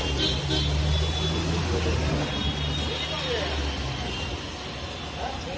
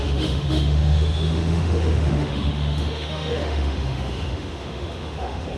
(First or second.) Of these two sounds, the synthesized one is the second